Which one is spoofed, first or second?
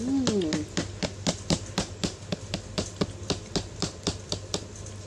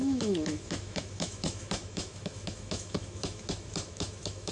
second